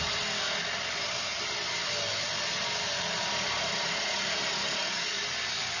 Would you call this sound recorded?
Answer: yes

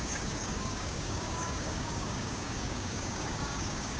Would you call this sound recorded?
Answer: no